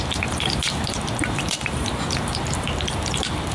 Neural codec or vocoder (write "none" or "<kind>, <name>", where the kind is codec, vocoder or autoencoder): vocoder, BigVGAN v2